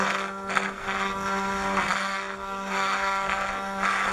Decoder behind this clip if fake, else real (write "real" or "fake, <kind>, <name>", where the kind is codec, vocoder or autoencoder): fake, codec, SNAC